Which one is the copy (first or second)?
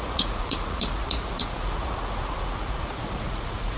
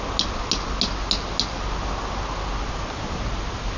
first